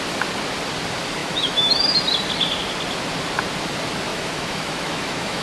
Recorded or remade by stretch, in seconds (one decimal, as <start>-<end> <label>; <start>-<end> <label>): 0.0-1.2 recorded; 1.2-1.9 remade; 1.9-4.1 recorded; 4.1-5.4 remade